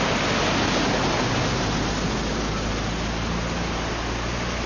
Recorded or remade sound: recorded